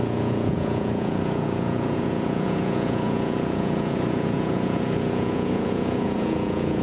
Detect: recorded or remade remade